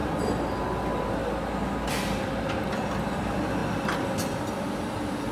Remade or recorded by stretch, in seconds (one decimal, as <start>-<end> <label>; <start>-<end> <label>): 0.0-3.2 recorded; 3.2-3.6 remade; 3.6-4.5 recorded; 4.5-5.3 remade